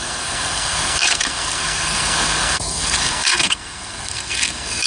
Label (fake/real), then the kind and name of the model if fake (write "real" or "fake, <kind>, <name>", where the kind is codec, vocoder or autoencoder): fake, codec, SNAC